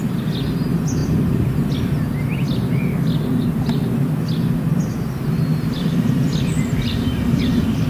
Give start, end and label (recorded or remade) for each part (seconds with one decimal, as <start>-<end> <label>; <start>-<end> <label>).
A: 0.0-1.0 recorded; 1.0-1.7 remade; 1.7-5.5 recorded; 5.5-7.4 remade; 7.4-7.9 recorded